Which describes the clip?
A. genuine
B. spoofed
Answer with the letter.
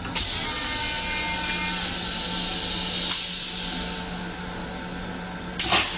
A